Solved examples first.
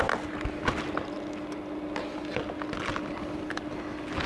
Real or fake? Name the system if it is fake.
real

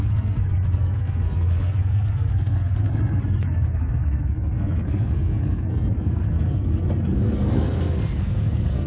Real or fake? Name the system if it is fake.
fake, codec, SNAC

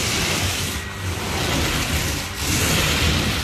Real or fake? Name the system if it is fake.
real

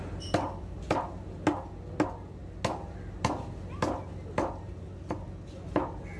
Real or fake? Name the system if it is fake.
real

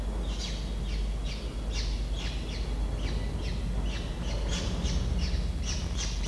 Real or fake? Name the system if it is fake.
real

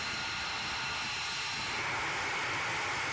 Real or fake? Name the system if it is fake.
real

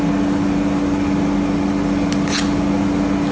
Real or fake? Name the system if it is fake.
real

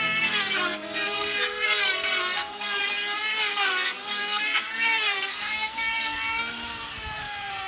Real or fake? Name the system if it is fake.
fake, codec, SNAC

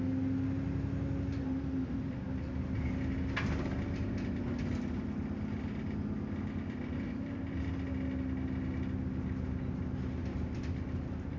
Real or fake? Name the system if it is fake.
real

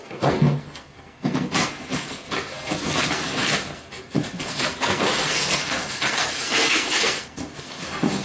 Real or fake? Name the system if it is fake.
fake, codec, SNAC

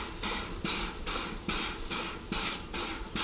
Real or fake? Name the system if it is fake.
real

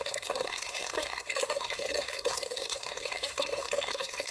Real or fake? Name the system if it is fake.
fake, codec, SNAC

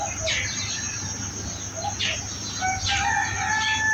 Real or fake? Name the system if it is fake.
real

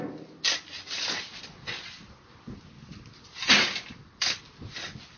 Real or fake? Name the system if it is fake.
real